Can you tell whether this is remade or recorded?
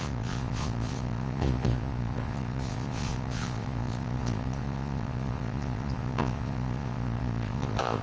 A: remade